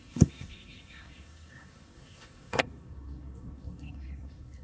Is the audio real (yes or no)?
no